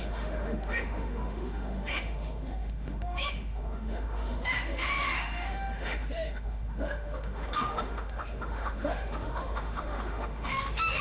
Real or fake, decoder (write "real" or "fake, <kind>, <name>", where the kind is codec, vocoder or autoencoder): fake, autoencoder, DAC-VAE